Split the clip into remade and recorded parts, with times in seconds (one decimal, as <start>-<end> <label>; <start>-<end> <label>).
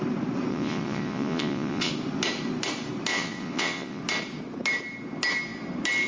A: 0.0-0.5 recorded; 0.5-1.9 remade; 1.9-3.1 recorded; 3.1-4.0 remade; 4.0-6.1 recorded